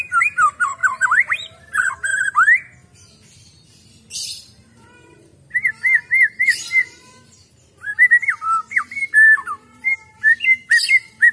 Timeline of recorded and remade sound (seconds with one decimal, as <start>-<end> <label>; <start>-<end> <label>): 0.0-2.1 remade; 2.1-3.5 recorded; 3.5-5.3 remade; 5.3-6.4 recorded; 6.4-11.3 remade